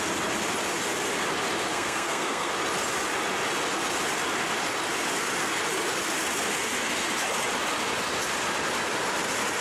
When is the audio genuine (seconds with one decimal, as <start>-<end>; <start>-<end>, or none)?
0.0-1.7; 2.5-9.6